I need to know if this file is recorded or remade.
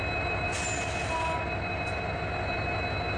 recorded